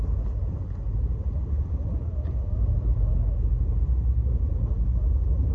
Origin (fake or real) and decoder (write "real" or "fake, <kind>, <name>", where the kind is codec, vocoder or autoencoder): real